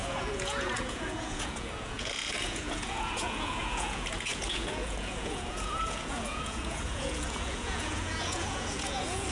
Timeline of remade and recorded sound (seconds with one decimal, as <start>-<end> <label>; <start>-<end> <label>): 0.0-9.3 remade